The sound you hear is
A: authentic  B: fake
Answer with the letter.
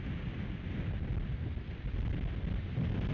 A